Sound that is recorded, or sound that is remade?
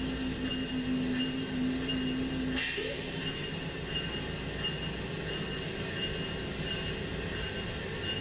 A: recorded